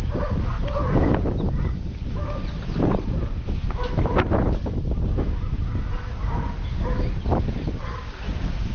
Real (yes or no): yes